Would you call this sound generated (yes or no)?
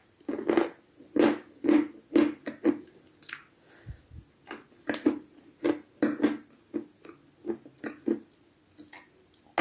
no